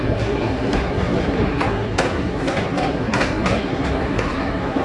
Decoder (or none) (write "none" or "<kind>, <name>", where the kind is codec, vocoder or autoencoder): codec, SNAC